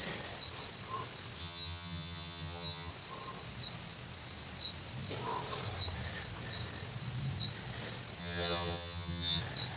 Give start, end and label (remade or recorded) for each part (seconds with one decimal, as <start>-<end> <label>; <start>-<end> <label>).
0.0-1.4 recorded; 1.4-2.9 remade; 2.9-8.2 recorded; 8.2-9.4 remade; 9.4-9.8 recorded